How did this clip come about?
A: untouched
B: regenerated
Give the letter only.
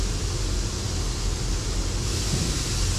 A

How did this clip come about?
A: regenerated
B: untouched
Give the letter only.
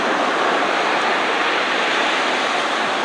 B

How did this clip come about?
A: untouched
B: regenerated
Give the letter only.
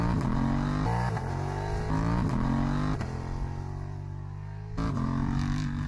A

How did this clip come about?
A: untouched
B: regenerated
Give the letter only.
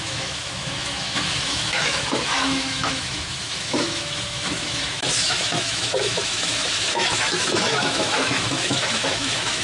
B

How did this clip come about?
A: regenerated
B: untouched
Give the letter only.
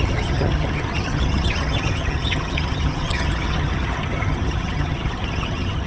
A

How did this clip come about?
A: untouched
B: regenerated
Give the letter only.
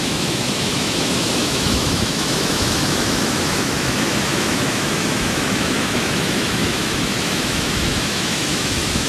B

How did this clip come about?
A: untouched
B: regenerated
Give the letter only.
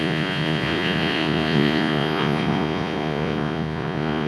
B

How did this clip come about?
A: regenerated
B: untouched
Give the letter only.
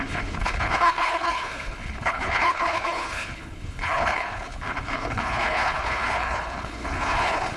A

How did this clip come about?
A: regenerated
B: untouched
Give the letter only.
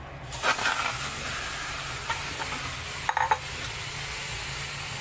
B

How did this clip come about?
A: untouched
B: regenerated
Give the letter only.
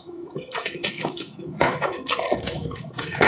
B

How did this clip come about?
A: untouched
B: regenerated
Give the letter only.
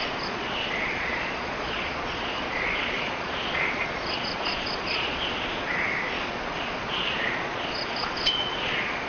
B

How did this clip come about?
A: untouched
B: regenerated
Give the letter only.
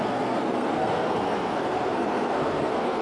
B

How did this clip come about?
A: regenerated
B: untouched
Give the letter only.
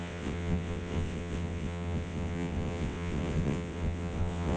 A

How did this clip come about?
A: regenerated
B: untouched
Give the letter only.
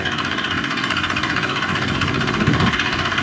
A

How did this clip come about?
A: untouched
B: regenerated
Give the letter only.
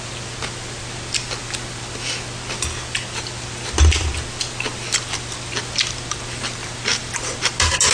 A